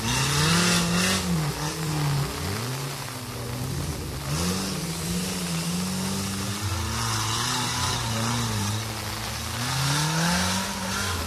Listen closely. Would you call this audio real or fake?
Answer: real